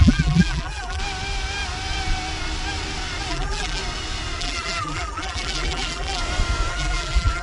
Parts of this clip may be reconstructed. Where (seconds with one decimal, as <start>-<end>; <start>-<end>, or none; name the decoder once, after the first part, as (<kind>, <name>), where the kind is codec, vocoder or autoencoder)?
0.0-1.0 (vocoder, BigVGAN v2); 3.3-3.8; 4.4-6.2; 6.7-7.4